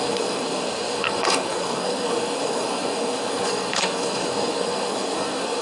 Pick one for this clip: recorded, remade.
remade